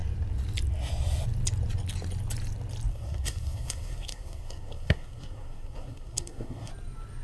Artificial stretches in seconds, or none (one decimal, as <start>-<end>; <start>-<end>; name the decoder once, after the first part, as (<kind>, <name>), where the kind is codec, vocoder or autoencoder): 2.9-6.7 (codec, SNAC)